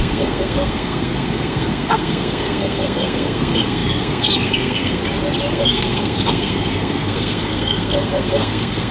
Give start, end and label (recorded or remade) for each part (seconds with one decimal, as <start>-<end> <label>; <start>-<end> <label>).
0.0-5.0 remade; 5.0-5.5 recorded; 5.5-8.9 remade